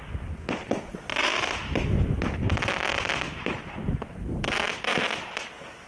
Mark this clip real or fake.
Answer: real